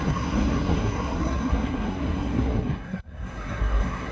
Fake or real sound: fake